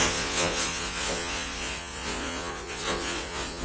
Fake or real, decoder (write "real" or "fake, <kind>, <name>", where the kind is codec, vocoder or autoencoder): fake, vocoder, Vocos